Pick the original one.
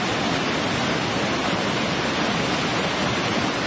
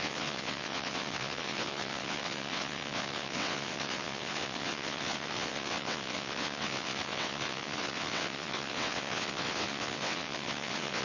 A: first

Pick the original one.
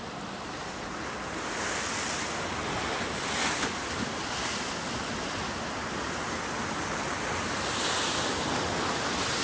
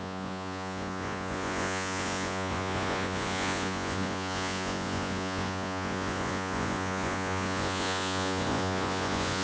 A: first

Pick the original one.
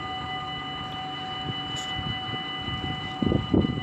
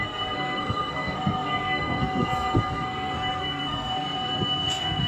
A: first